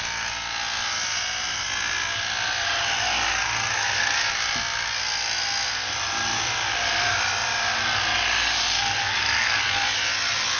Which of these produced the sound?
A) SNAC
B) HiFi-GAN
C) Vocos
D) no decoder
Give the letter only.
D